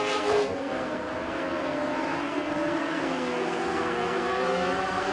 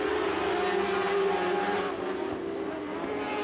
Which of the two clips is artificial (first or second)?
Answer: first